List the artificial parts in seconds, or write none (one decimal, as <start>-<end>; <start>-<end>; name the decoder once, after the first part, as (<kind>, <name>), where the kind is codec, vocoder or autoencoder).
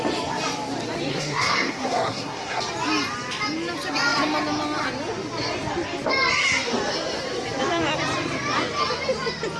1.1-2.6 (codec, SNAC)